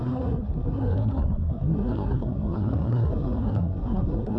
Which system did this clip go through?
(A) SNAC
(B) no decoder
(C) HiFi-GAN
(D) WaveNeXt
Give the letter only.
A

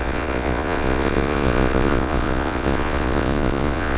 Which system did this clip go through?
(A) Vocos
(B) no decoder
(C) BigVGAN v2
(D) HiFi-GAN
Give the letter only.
A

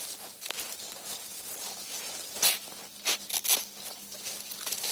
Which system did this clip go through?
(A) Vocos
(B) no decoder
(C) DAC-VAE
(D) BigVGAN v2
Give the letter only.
B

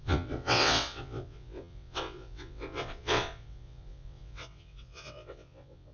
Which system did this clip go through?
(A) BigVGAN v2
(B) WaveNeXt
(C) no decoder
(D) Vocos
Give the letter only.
B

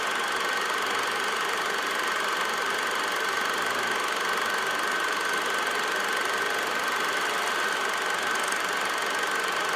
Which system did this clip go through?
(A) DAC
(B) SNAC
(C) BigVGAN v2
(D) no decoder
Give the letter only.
D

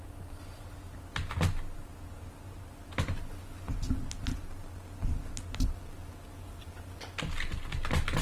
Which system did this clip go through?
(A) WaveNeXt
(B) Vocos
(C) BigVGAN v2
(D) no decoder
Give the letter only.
D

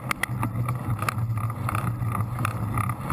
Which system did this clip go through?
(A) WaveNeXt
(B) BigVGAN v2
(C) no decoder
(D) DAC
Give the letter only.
C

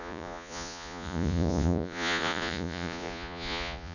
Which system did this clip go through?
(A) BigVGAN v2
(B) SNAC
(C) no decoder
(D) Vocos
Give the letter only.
D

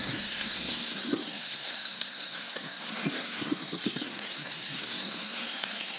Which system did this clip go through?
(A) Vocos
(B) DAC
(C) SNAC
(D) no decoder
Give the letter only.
C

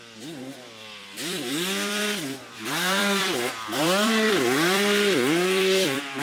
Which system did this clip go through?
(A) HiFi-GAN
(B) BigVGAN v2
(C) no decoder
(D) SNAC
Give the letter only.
B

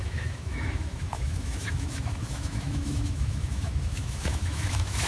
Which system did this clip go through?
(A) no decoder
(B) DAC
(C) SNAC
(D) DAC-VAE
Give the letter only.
D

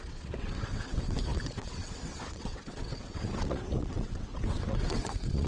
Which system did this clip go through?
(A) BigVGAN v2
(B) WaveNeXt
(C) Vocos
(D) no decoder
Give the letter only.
B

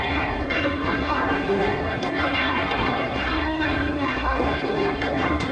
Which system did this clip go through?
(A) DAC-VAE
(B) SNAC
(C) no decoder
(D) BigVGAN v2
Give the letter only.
B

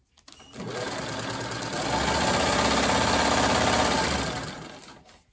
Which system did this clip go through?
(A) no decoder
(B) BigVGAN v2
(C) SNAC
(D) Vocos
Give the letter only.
A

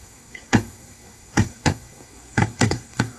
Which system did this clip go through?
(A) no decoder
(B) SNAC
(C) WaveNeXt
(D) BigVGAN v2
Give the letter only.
B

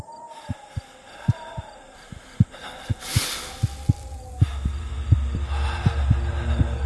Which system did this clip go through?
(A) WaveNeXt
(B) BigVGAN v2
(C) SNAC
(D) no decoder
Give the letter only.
D